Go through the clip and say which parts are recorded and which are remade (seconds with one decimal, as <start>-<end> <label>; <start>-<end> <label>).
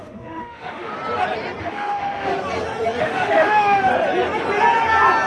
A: 0.0-0.9 remade; 0.9-1.6 recorded; 1.6-2.3 remade; 2.3-3.0 recorded; 3.0-3.9 remade; 3.9-5.3 recorded